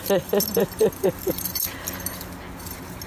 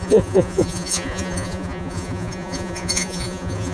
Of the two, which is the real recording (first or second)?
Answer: first